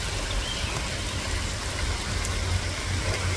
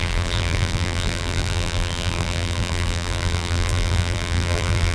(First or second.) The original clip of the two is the first